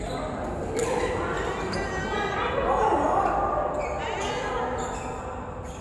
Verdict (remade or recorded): recorded